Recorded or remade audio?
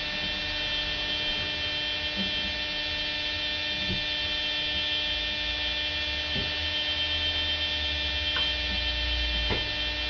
recorded